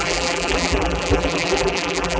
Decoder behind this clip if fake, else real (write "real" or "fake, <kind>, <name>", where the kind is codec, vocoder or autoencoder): fake, vocoder, BigVGAN v2